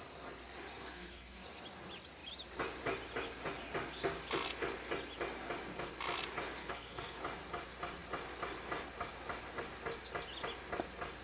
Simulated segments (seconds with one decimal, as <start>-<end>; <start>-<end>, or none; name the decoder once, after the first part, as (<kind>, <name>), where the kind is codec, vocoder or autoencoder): 0.7-1.6 (codec, SNAC); 6.6-7.2